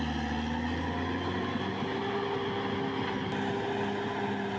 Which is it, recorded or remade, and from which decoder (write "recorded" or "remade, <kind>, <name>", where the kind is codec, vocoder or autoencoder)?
recorded